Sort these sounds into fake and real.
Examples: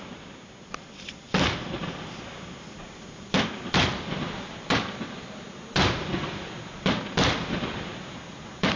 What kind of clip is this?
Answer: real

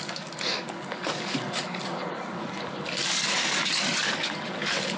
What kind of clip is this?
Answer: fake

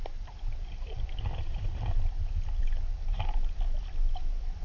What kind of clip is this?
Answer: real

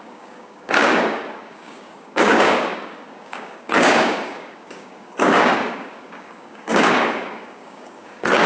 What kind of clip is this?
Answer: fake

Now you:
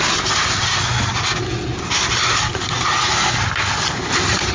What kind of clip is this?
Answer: real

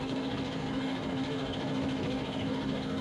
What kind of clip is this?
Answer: fake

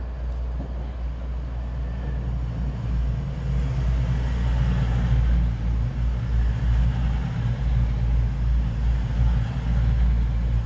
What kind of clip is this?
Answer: real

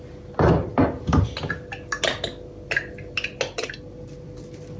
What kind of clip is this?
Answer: real